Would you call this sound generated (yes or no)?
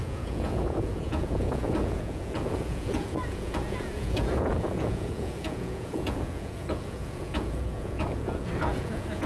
yes